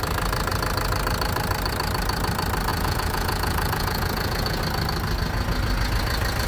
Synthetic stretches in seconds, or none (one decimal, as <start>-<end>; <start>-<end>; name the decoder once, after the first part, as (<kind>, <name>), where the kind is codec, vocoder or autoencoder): 2.7-4.6 (vocoder, Vocos)